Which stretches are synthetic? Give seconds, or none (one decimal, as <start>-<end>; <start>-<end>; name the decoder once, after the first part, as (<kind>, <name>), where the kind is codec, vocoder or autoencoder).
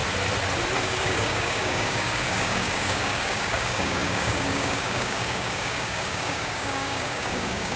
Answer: 0.8-7.8 (codec, DAC)